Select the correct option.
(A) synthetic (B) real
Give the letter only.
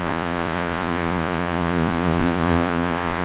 A